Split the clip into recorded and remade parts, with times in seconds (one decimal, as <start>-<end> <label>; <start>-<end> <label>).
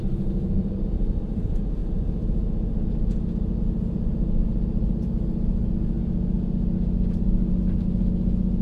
0.0-8.6 recorded